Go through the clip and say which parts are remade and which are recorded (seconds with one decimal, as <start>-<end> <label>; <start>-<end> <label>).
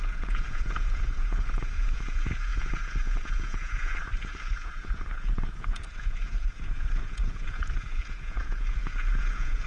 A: 0.0-9.7 remade